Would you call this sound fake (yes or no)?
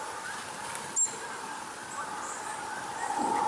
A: no